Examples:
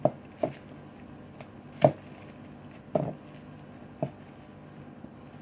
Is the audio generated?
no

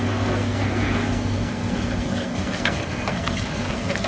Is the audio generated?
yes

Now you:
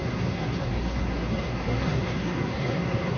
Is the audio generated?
yes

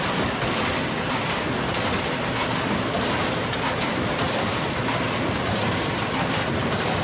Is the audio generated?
no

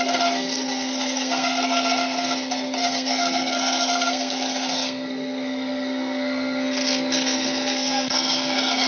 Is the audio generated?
yes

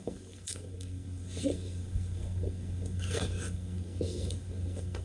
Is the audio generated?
yes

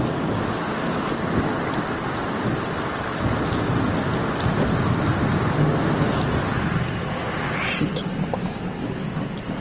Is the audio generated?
no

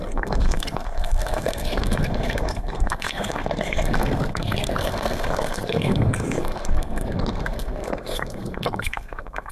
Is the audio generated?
yes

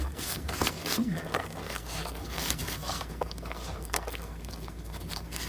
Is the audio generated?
yes